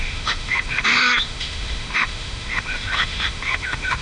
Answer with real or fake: fake